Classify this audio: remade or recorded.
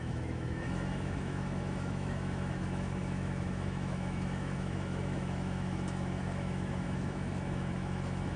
remade